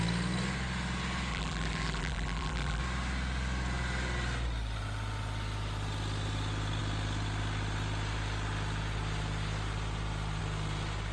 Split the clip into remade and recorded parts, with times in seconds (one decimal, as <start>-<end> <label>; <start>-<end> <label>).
0.0-1.3 recorded; 1.3-2.8 remade; 2.8-11.1 recorded

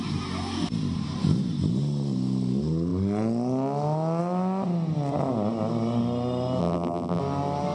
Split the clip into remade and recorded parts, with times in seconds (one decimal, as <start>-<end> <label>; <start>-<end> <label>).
0.0-6.6 recorded; 6.6-7.2 remade; 7.2-7.7 recorded

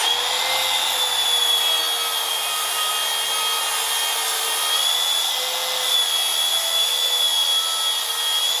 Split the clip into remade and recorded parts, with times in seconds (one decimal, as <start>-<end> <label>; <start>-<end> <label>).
0.0-2.3 recorded; 2.3-2.9 remade; 2.9-8.6 recorded

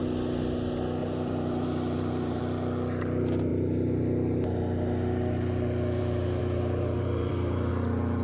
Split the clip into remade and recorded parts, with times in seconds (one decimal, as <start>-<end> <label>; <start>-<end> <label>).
0.0-1.0 recorded; 1.0-2.4 remade; 2.4-6.4 recorded; 6.4-7.7 remade; 7.7-8.2 recorded

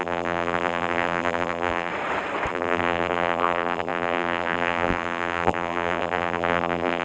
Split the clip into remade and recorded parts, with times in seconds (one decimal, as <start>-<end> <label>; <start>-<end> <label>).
0.0-1.9 remade; 1.9-2.5 recorded; 2.5-7.0 remade

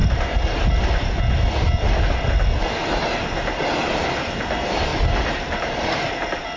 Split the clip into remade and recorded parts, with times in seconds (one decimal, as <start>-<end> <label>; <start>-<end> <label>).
0.0-4.9 recorded; 4.9-6.1 remade; 6.1-6.6 recorded

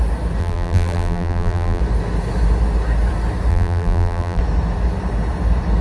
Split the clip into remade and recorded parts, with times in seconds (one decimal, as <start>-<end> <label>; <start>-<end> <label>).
0.0-0.4 recorded; 0.4-1.8 remade; 1.8-3.5 recorded; 3.5-4.4 remade; 4.4-5.8 recorded

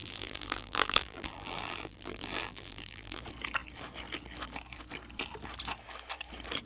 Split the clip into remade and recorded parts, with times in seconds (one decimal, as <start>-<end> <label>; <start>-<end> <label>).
0.0-3.2 remade; 3.2-6.7 recorded